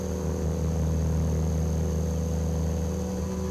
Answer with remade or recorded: recorded